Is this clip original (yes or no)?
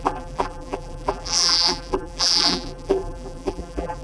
no